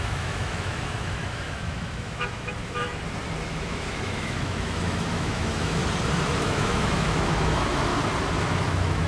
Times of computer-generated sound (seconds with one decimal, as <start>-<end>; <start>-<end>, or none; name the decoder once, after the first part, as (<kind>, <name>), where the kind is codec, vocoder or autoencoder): 0.0-2.9 (autoencoder, DAC-VAE); 3.5-5.8; 6.4-7.9; 8.4-9.1